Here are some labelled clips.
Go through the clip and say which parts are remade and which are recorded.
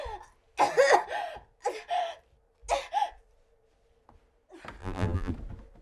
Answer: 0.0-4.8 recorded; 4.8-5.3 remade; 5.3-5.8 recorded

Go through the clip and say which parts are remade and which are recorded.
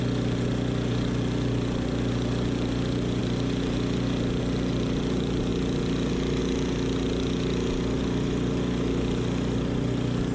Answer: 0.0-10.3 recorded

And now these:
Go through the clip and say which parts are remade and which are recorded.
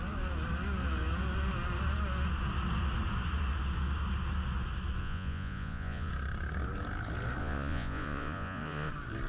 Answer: 0.0-5.0 recorded; 5.0-6.1 remade; 6.1-7.4 recorded; 7.4-8.9 remade; 8.9-9.3 recorded